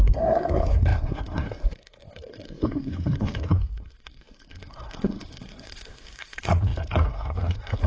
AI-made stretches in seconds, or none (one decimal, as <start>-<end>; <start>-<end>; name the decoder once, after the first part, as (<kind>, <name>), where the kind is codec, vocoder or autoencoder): 0.0-7.9 (codec, SNAC)